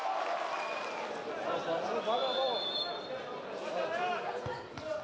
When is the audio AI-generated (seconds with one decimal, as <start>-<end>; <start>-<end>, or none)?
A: 0.0-1.0; 2.2-5.0